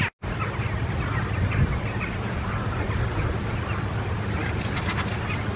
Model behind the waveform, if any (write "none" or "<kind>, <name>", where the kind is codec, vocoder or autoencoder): none